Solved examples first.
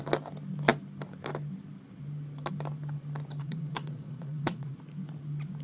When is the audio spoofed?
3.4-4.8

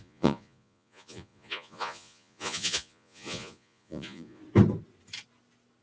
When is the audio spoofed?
0.0-4.4